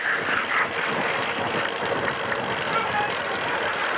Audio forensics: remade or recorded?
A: recorded